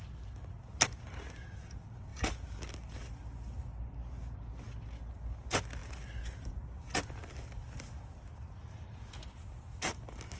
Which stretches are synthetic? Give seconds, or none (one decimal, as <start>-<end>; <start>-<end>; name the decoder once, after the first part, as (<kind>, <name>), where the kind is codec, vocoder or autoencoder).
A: none